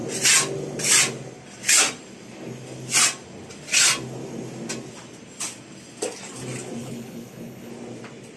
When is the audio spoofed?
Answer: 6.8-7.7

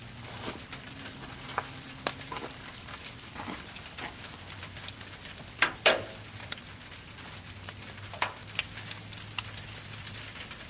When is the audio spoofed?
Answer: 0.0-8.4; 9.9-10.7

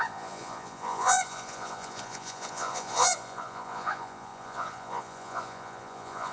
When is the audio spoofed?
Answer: 0.0-6.3

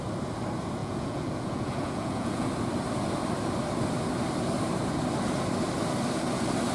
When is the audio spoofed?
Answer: 0.8-2.5

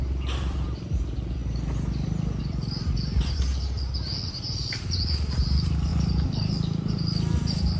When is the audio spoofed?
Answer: 0.0-1.4; 2.4-3.5; 4.3-7.8

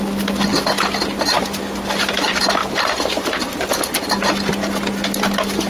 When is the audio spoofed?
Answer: 2.6-3.7

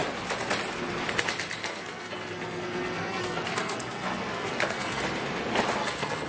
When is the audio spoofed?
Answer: 1.6-5.0; 5.8-6.3

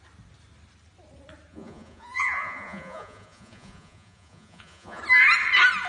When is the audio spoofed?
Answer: 1.5-5.0